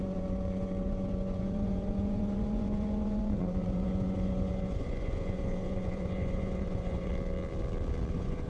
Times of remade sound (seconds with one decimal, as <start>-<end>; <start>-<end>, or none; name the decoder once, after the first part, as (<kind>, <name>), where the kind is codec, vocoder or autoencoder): 0.0-7.1 (vocoder, Vocos); 8.1-8.5